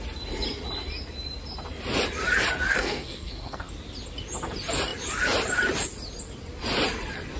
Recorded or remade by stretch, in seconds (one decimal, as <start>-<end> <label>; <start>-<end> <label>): 0.0-2.7 recorded; 2.7-3.7 remade; 3.7-7.4 recorded